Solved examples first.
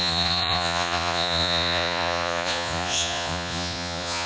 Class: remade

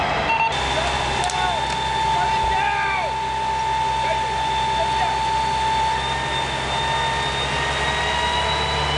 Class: recorded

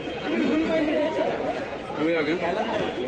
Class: remade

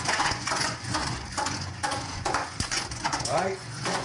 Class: remade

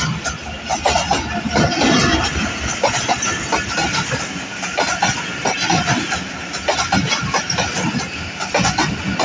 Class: recorded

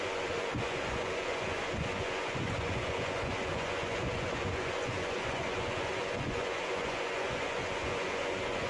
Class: remade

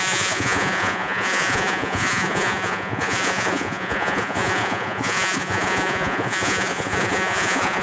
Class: remade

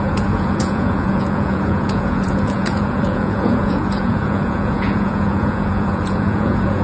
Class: remade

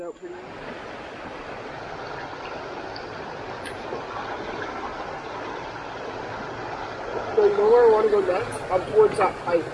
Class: recorded